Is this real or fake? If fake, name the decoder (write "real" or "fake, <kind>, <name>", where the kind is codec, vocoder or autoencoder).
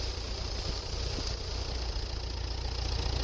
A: real